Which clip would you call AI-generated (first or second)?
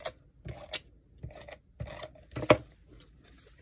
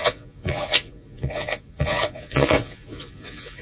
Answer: second